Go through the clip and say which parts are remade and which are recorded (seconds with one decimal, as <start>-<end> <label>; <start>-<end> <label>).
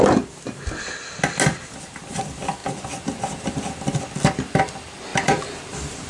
0.0-6.1 recorded